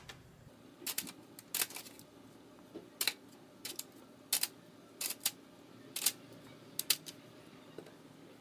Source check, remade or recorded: recorded